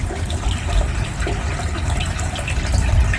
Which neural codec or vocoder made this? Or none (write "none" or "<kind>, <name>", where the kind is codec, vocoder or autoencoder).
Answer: none